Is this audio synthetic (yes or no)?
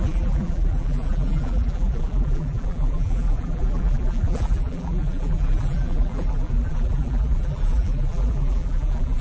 yes